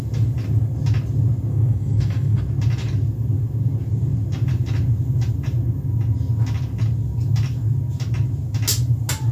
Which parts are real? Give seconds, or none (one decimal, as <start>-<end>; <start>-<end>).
0.0-1.5; 2.4-9.3